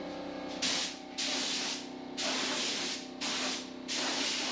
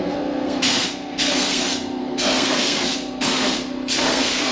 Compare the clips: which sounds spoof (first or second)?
second